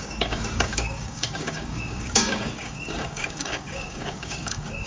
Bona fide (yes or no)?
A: no